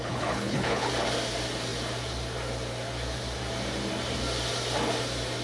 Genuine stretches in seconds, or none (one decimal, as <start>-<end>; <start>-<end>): 0.9-5.4